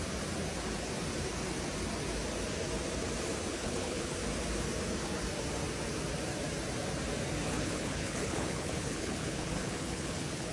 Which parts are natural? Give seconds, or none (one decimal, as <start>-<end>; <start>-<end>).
0.0-3.5; 4.1-7.5

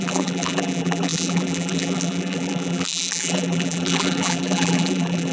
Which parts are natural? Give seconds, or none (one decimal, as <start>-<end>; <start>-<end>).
none

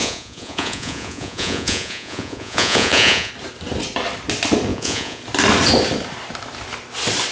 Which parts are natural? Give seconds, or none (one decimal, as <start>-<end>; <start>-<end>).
3.3-4.7; 5.2-7.3

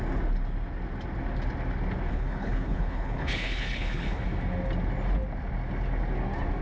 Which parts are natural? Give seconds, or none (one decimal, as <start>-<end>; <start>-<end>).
0.0-2.1; 4.2-6.6

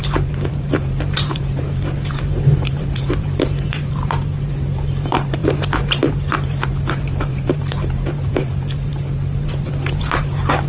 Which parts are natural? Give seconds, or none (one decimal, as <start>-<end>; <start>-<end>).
none